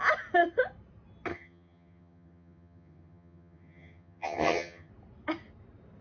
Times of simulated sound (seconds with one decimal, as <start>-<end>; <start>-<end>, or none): 1.3-4.9